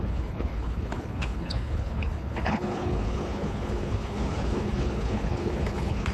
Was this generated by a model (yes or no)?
yes